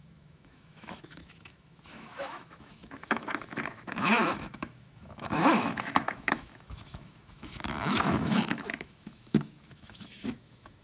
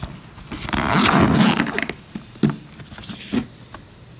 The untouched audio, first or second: second